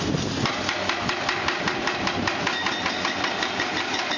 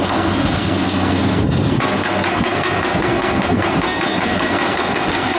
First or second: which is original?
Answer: first